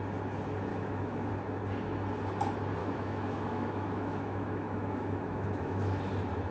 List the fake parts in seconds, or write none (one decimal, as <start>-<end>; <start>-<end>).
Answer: 0.7-1.3; 2.8-6.0